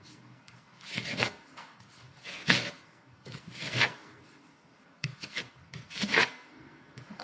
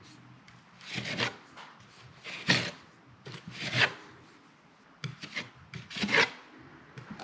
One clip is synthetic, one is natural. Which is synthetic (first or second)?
first